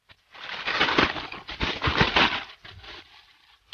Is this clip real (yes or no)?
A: yes